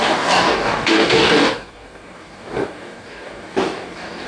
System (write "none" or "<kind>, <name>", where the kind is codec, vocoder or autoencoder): codec, DAC